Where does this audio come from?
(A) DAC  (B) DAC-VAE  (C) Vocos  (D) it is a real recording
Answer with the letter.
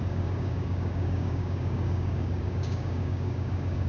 A